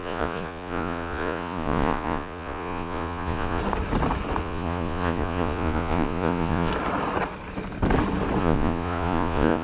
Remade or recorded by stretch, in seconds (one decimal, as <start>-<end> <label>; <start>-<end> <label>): 0.0-3.6 remade; 3.6-4.4 recorded; 4.4-6.7 remade; 6.7-8.4 recorded; 8.4-9.6 remade